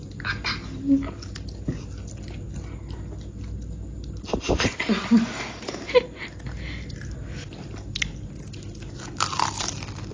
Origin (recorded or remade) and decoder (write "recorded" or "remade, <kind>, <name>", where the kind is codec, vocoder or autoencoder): recorded